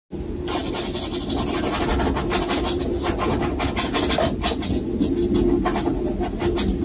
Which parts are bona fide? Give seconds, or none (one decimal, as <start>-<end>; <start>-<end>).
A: 0.0-6.8